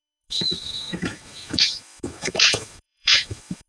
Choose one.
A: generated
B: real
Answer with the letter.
A